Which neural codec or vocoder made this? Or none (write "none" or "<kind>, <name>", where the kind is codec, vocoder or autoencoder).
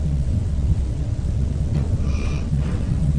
vocoder, WaveNeXt